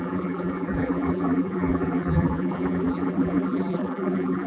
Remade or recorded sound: remade